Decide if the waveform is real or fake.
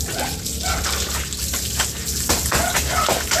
real